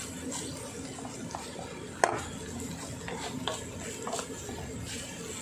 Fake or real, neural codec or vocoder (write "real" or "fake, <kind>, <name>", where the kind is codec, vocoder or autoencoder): real